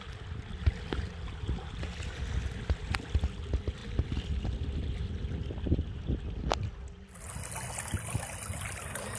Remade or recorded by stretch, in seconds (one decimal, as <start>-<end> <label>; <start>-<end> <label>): 0.0-9.2 recorded

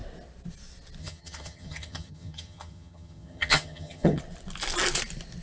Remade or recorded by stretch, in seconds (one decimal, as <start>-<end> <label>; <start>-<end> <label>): 0.0-1.0 recorded; 1.0-4.2 remade; 4.2-5.4 recorded

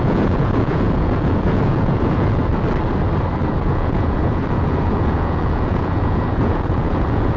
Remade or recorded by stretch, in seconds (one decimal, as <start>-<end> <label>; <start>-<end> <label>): 0.0-2.5 remade; 2.5-3.6 recorded; 3.6-7.4 remade